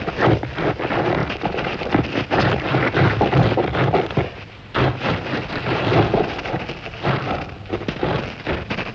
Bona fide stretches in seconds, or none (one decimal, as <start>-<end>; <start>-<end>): 0.0-8.9